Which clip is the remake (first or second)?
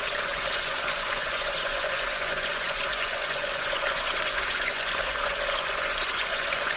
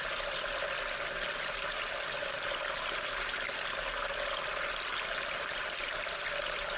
first